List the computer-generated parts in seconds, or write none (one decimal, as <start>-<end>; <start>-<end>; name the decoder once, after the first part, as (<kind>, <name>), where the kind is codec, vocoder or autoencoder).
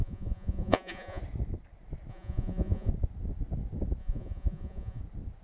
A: 0.0-1.2 (vocoder, Vocos); 2.1-2.9; 4.0-5.0